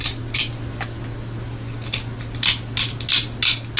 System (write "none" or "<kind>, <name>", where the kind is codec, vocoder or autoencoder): none